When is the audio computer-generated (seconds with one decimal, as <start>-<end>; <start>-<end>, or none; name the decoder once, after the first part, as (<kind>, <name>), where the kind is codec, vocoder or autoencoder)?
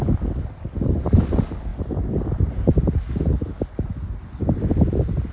none